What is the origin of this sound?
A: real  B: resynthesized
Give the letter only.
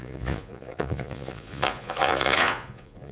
B